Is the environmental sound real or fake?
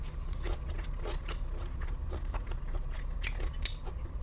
fake